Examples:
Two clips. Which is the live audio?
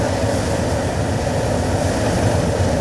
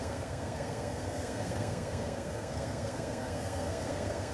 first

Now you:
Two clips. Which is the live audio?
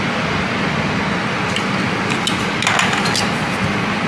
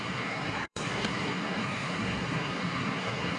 first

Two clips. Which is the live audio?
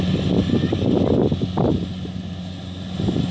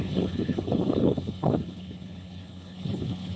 first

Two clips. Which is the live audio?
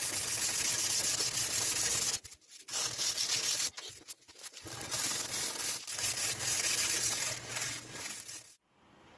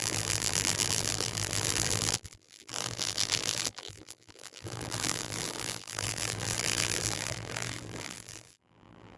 first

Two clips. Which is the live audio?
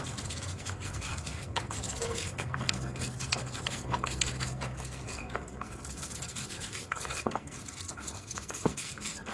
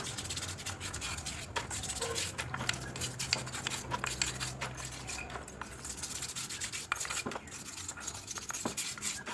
second